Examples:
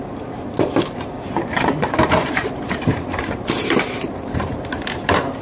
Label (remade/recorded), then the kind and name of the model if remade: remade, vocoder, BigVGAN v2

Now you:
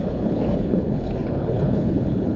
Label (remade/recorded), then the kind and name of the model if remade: remade, codec, HILCodec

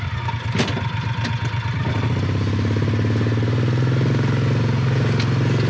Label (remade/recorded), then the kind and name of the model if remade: recorded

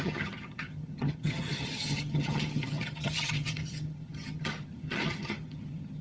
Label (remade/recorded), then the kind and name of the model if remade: remade, vocoder, HiFi-GAN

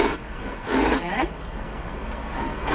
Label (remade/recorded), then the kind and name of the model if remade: remade, codec, SNAC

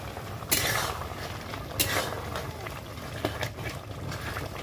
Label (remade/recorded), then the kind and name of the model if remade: recorded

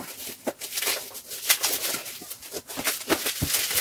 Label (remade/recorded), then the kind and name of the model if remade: recorded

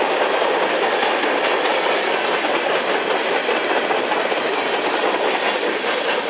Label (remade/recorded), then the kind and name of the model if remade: recorded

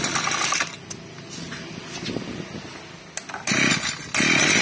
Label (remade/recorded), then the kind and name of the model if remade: recorded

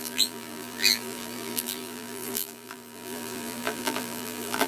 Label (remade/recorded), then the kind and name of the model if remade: remade, vocoder, BigVGAN v2